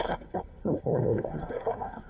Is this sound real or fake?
fake